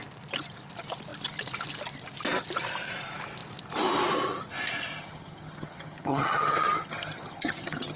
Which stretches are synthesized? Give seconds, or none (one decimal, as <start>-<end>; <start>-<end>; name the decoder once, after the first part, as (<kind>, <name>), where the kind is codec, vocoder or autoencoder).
4.9-8.0 (vocoder, HiFi-GAN)